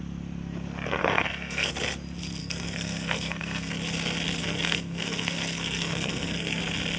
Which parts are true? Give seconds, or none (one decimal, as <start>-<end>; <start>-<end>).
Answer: 0.0-1.0; 1.7-2.4; 3.7-4.4; 6.6-7.0